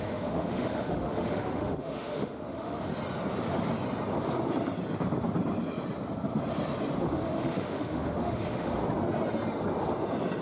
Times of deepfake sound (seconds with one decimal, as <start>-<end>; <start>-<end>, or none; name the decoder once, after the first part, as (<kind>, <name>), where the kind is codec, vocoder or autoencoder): 0.0-2.9 (autoencoder, DAC-VAE); 7.0-8.8